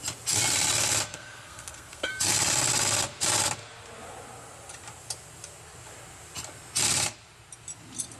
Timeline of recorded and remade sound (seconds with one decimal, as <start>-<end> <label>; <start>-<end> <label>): 0.0-1.1 recorded; 1.1-2.1 remade; 2.1-8.2 recorded